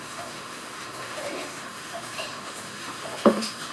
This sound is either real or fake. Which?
fake